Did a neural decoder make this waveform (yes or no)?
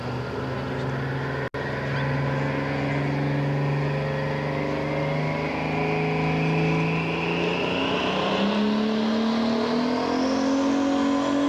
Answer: no